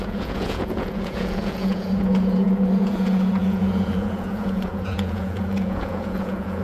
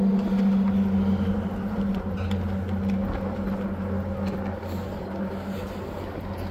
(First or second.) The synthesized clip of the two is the first